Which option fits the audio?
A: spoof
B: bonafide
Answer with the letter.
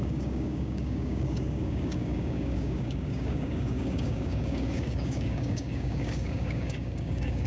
A